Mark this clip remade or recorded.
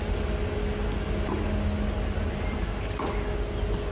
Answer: recorded